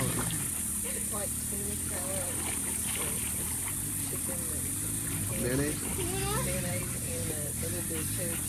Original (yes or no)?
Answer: yes